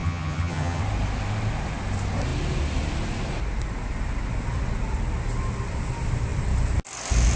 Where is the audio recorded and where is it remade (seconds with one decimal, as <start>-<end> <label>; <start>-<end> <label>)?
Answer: 0.0-0.8 remade; 0.8-7.4 recorded